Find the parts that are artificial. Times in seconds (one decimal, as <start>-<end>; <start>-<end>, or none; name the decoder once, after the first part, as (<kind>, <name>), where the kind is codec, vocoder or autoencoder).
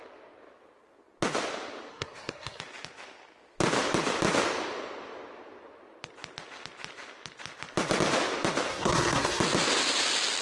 1.9-2.6 (codec, SNAC); 8.7-9.4